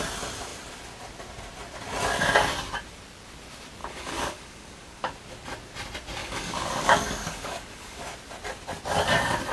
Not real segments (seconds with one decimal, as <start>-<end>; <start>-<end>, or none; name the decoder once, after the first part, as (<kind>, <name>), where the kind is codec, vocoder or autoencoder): 3.8-5.1 (codec, DAC); 6.2-8.0